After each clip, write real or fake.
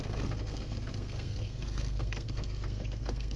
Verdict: fake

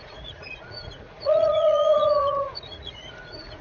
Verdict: fake